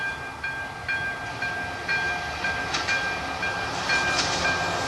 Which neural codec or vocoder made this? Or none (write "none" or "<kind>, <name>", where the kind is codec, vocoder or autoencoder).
none